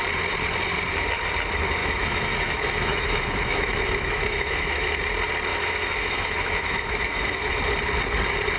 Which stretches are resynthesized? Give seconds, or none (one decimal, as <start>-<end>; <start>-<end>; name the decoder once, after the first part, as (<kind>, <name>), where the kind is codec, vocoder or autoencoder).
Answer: 1.8-5.0 (autoencoder, DAC-VAE); 5.5-7.5